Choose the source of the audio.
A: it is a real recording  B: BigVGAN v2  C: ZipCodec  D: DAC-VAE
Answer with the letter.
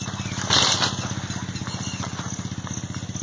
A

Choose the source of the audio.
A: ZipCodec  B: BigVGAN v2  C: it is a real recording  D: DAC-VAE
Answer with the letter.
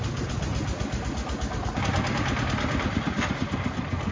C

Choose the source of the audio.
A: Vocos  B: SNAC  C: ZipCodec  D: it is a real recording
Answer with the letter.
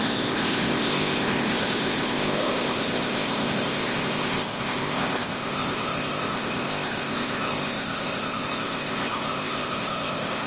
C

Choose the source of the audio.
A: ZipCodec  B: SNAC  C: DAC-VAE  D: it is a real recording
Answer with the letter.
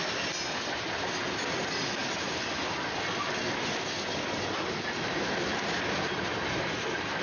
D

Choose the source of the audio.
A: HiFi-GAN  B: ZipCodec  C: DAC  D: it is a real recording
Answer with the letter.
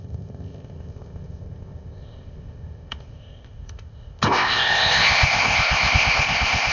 B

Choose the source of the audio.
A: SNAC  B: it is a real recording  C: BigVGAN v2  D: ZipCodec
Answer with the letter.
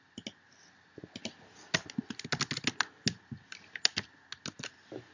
B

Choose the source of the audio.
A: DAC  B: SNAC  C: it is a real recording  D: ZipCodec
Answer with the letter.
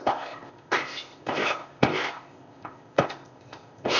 D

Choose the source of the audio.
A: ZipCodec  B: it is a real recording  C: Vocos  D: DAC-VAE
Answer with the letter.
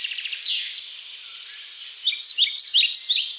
B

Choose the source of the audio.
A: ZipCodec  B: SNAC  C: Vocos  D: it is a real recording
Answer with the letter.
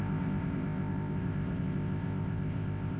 A